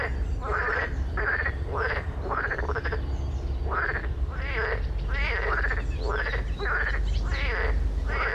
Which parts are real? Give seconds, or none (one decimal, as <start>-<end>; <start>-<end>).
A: 0.0-0.4; 2.6-4.0; 4.5-8.3